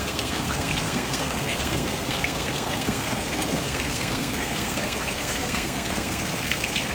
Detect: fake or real fake